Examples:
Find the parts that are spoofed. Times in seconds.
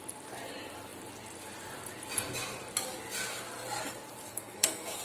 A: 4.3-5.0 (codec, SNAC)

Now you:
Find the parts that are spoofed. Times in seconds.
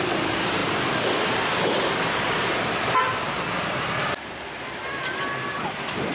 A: none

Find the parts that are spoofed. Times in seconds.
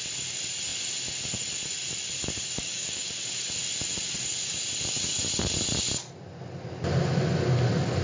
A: 2.6-3.1 (codec, DAC)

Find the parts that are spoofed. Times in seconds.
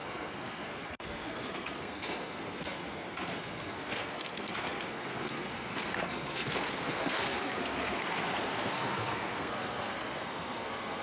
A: 0.0-11.0 (codec, SNAC)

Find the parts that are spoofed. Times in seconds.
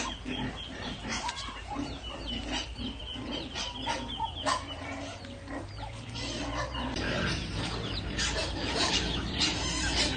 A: 8.4-9.3 (autoencoder, DAC-VAE)